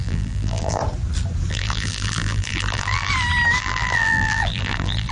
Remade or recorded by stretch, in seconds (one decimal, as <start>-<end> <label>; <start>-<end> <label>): 0.0-0.8 remade; 0.8-1.5 recorded; 1.5-3.1 remade; 3.1-3.6 recorded; 3.6-5.1 remade